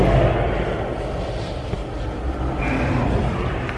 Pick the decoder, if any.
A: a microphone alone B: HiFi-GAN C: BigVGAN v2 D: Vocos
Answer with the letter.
A